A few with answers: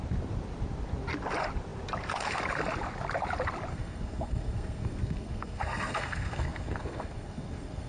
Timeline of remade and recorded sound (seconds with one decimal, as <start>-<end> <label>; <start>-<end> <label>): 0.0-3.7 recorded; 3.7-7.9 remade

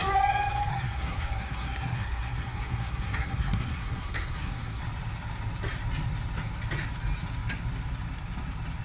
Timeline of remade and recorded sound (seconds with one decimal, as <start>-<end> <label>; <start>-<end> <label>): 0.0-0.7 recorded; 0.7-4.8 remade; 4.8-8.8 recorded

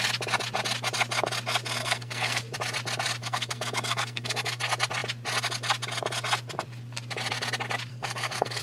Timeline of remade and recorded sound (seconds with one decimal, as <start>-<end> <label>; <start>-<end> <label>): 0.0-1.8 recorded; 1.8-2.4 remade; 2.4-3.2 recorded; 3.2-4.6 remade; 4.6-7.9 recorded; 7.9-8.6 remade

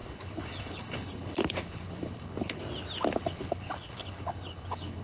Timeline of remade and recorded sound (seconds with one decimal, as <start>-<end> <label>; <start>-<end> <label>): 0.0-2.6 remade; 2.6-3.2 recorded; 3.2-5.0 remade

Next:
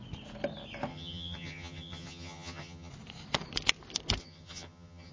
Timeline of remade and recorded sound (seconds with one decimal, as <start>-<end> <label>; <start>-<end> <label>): 0.0-0.9 recorded; 0.9-2.9 remade; 2.9-4.2 recorded; 4.2-5.1 remade

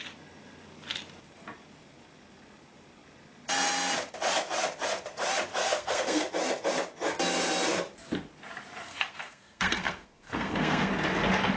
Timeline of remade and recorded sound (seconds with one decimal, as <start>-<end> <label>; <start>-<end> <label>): 0.0-5.6 recorded; 5.6-6.3 remade; 6.3-8.8 recorded; 8.8-10.9 remade; 10.9-11.6 recorded

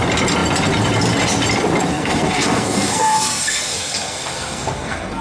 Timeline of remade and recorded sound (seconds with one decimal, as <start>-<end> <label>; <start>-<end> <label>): 0.0-1.9 recorded; 1.9-5.2 remade

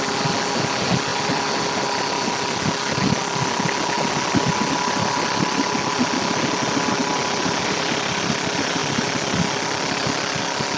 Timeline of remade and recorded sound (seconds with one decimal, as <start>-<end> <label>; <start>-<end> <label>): 0.0-10.8 recorded